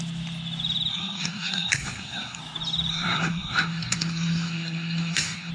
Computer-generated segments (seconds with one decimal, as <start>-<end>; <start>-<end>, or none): 0.9-2.4; 2.9-5.5